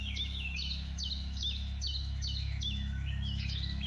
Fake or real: fake